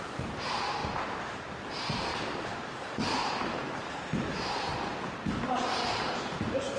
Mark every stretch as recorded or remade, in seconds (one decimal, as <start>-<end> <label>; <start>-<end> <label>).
0.0-4.7 remade; 4.7-5.5 recorded; 5.5-6.8 remade